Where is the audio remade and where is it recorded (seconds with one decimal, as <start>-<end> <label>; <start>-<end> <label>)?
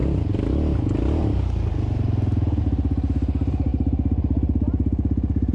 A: 0.0-5.5 recorded